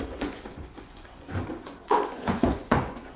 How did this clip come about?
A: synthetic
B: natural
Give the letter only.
A